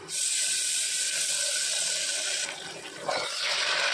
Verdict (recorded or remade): recorded